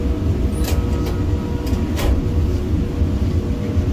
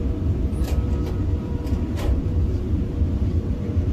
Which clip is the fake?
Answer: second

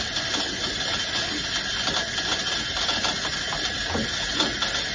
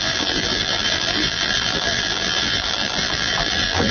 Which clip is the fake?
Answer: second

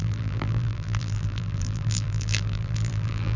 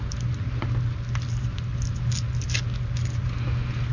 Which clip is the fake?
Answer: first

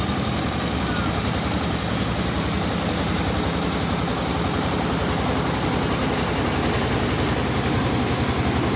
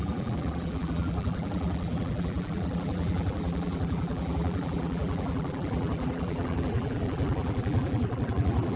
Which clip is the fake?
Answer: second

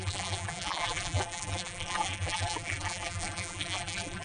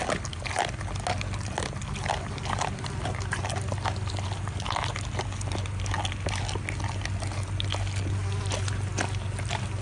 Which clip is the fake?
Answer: first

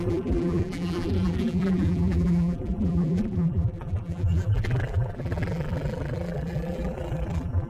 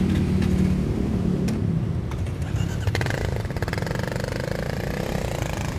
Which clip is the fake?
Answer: first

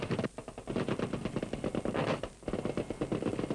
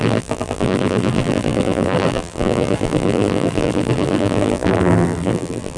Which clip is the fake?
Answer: second